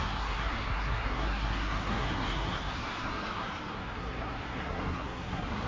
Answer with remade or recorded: remade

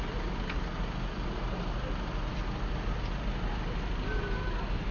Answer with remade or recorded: recorded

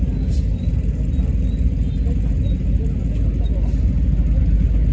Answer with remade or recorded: recorded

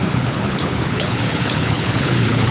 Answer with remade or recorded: remade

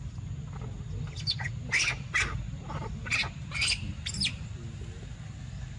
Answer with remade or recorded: recorded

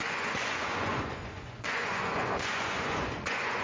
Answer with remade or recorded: remade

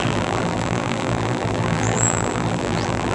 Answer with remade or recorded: remade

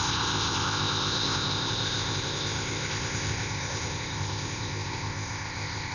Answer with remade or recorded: remade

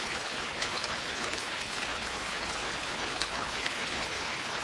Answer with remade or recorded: remade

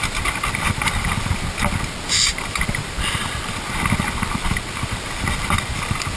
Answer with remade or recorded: recorded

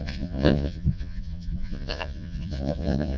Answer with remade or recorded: remade